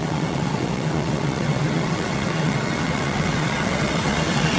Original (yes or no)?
no